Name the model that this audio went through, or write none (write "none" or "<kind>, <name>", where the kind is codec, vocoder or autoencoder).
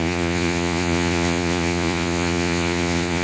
vocoder, Vocos